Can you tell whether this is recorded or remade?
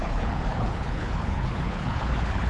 remade